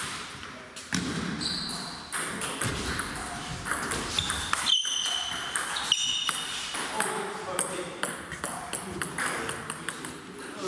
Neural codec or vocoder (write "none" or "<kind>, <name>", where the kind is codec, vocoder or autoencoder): none